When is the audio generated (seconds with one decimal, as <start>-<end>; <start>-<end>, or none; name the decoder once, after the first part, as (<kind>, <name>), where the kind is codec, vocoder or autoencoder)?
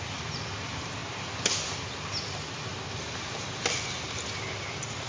none